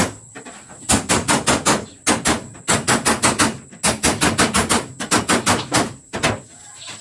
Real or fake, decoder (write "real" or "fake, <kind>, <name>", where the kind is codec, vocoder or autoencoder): real